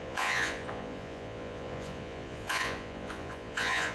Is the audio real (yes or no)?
no